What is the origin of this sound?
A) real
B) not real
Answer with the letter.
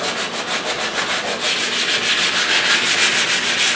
A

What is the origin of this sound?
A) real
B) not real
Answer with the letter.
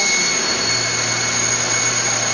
A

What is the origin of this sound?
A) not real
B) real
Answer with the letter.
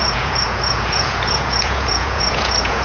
A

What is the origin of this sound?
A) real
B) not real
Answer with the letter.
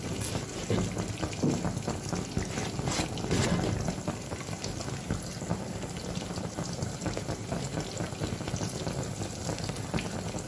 A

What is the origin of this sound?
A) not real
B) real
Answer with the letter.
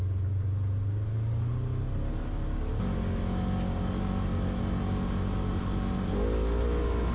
B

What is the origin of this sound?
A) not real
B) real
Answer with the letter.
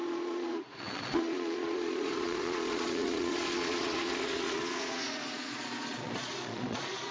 A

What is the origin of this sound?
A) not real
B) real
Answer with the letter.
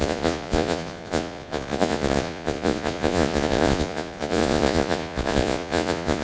A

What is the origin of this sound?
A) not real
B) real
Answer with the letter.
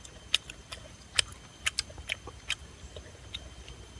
B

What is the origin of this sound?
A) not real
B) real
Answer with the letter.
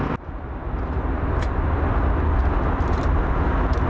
B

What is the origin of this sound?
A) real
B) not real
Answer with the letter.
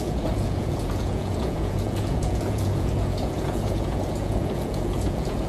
B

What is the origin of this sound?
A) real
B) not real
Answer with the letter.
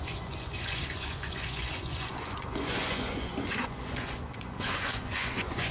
B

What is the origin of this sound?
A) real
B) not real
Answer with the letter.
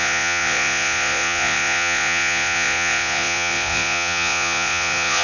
B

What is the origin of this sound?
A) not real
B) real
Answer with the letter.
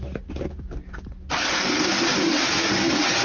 B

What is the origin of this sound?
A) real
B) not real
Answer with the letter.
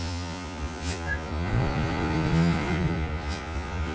B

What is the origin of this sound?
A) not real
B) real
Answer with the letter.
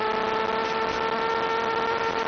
B